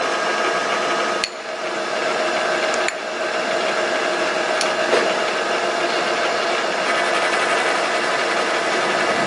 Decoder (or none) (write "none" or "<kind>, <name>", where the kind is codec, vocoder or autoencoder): none